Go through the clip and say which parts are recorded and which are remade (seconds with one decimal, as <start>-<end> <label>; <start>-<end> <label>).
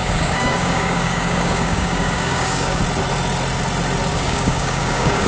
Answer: 0.0-2.8 remade; 2.8-4.1 recorded; 4.1-5.3 remade